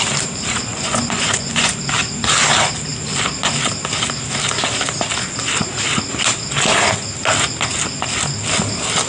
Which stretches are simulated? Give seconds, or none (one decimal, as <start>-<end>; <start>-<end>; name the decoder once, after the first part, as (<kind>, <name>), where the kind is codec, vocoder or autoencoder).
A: 0.7-1.7 (vocoder, Vocos)